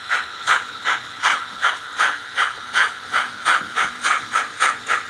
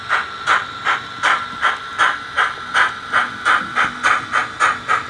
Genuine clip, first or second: second